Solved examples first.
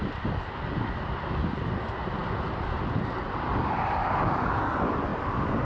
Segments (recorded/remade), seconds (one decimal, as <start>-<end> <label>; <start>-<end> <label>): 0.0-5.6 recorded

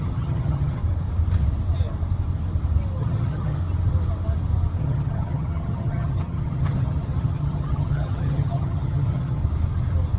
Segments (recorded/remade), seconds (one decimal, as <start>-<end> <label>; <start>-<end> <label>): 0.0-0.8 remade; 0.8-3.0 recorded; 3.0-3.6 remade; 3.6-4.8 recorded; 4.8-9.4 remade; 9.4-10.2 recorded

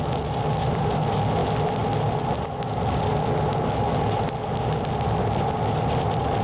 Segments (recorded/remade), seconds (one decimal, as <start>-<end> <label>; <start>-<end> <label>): 0.0-6.4 recorded

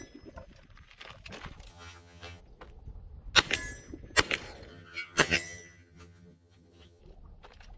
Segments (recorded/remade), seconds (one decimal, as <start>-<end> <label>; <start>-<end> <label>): 0.0-1.7 recorded; 1.7-2.4 remade; 2.4-4.7 recorded; 4.7-7.0 remade; 7.0-7.8 recorded

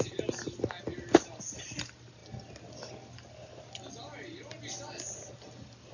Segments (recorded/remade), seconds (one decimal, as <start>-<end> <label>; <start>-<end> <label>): 0.0-5.9 recorded